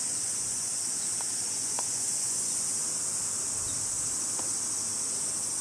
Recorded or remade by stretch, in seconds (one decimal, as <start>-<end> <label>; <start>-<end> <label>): 0.0-0.7 remade; 0.7-1.4 recorded; 1.4-2.7 remade; 2.7-5.6 recorded